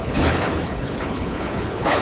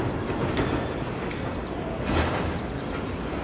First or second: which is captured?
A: second